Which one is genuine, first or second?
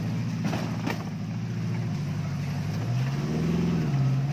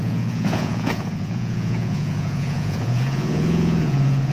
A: first